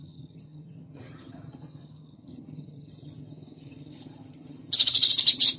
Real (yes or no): no